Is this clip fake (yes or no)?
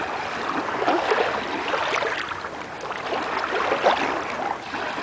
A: no